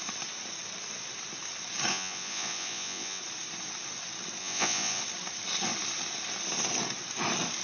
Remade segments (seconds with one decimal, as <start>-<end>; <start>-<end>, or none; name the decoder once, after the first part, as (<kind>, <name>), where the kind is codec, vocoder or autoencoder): 1.9-3.2 (vocoder, Vocos); 4.4-5.0